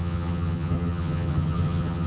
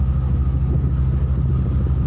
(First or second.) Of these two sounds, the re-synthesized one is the first